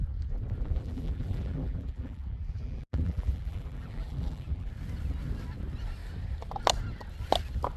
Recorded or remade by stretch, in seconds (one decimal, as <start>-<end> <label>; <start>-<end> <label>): 0.0-0.6 recorded; 0.6-4.7 remade; 4.7-7.8 recorded